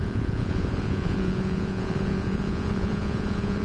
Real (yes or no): no